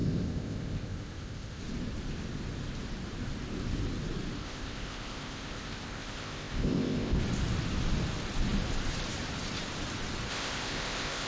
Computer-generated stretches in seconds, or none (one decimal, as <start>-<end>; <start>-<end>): 0.0-1.6; 4.4-7.2; 10.3-11.3